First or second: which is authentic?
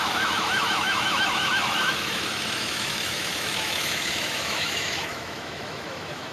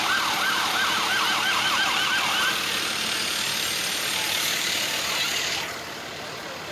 second